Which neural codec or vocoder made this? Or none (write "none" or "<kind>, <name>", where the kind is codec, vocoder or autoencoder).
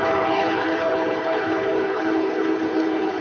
codec, HILCodec